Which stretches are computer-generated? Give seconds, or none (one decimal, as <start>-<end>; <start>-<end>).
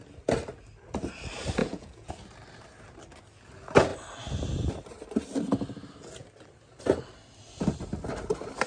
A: 1.6-2.1